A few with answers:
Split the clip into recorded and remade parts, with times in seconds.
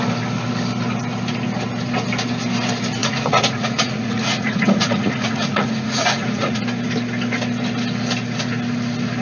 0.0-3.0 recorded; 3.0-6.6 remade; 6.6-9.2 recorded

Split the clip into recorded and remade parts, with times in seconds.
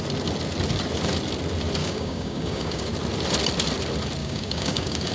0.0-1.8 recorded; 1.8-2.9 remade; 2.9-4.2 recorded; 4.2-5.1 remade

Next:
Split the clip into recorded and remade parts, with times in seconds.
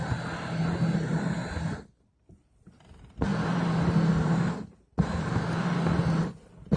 0.0-6.8 recorded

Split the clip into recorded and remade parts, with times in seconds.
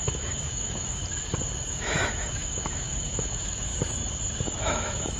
0.0-1.0 remade; 1.0-1.7 recorded; 1.7-3.7 remade; 3.7-4.4 recorded; 4.4-5.2 remade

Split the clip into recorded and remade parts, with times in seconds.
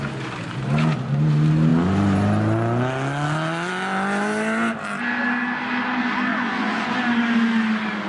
0.0-6.3 recorded; 6.3-6.9 remade; 6.9-8.1 recorded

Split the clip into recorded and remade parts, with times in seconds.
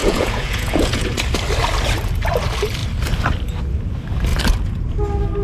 0.0-1.1 remade; 1.1-5.4 recorded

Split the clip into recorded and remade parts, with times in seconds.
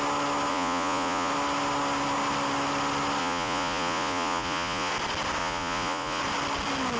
0.0-0.5 recorded; 0.5-1.3 remade; 1.3-3.2 recorded; 3.2-4.9 remade; 4.9-5.4 recorded; 5.4-6.2 remade; 6.2-7.0 recorded